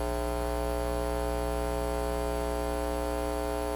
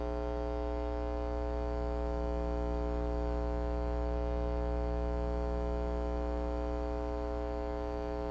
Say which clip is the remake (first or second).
second